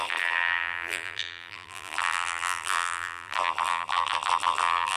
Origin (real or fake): fake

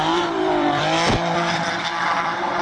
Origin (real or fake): fake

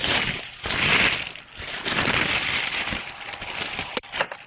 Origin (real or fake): fake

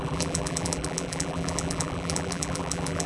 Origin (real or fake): fake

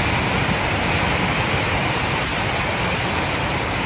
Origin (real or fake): real